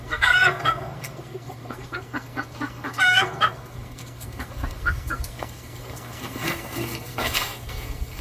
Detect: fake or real fake